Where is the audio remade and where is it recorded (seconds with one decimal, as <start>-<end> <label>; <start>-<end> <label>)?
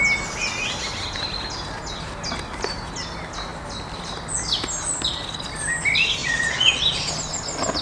0.0-6.2 recorded; 6.2-7.1 remade; 7.1-7.8 recorded